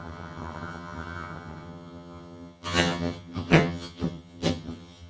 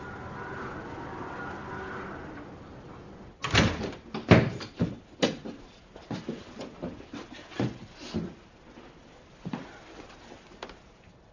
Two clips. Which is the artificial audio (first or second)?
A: first